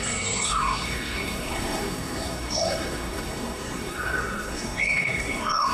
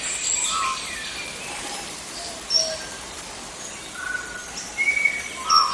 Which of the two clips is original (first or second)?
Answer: second